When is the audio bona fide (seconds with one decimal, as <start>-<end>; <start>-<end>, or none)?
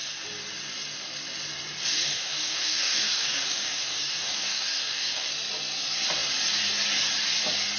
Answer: 0.0-1.9; 5.3-7.8